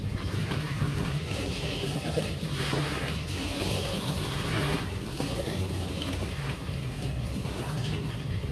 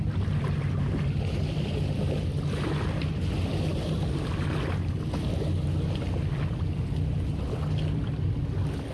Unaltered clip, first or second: second